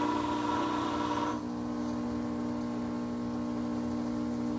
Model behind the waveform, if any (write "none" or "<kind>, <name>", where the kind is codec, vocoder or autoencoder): none